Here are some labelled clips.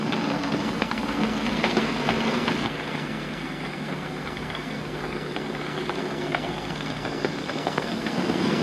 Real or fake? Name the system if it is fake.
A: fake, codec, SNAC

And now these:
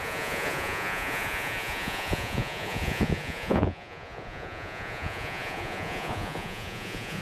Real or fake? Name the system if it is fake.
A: fake, vocoder, Vocos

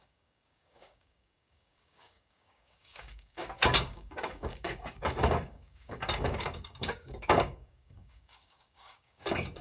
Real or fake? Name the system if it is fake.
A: fake, codec, DAC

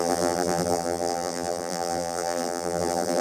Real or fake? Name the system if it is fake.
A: fake, vocoder, BigVGAN v2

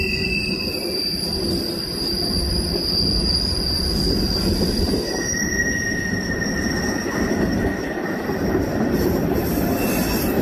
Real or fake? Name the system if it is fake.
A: fake, vocoder, BigVGAN v2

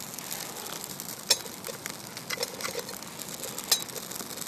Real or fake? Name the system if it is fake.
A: real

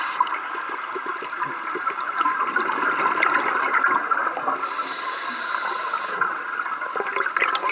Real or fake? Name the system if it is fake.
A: real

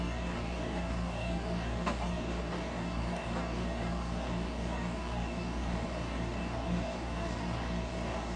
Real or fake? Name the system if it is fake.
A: fake, codec, DAC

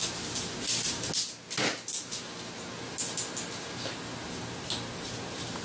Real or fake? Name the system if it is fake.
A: real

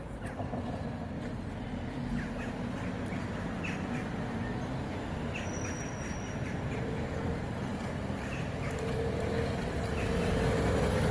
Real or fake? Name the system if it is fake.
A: real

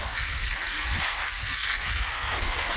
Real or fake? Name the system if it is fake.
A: fake, codec, SNAC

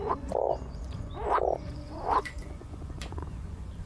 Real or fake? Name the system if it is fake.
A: fake, vocoder, Vocos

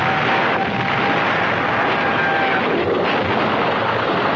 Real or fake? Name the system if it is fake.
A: real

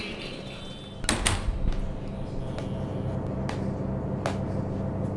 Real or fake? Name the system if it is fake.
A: real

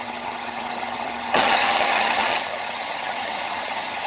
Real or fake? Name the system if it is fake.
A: fake, vocoder, HiFi-GAN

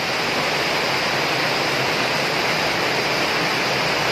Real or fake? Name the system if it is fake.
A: real